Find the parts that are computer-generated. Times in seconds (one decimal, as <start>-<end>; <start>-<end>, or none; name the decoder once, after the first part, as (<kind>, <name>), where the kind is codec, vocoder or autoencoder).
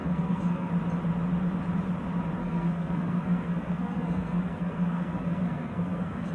0.0-0.7 (codec, SNAC); 2.4-6.3